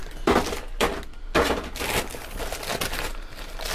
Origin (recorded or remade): recorded